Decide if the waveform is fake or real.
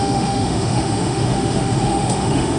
fake